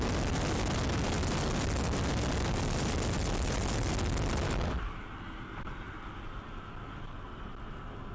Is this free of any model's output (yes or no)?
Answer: yes